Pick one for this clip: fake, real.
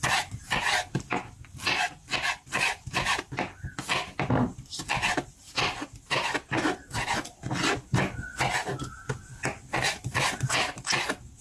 real